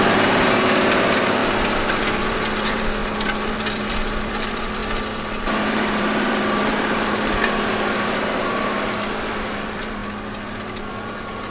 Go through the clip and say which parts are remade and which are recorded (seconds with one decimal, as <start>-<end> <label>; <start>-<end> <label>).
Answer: 0.0-4.8 remade; 4.8-5.5 recorded; 5.5-10.0 remade; 10.0-11.0 recorded; 11.0-11.5 remade